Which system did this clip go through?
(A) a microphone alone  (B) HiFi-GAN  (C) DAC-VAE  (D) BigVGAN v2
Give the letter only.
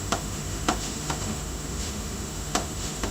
C